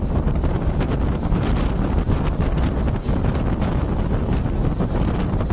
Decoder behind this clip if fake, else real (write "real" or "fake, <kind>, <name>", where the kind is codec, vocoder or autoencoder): real